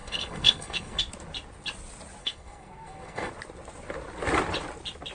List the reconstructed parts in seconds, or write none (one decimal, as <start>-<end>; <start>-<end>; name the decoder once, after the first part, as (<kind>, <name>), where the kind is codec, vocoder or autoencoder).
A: 0.0-1.0 (codec, SNAC); 2.2-3.3